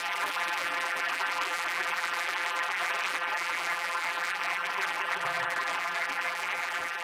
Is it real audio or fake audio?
fake